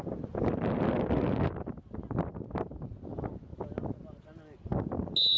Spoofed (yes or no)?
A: no